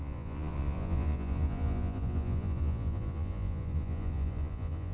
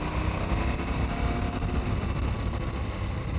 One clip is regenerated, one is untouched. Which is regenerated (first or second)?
first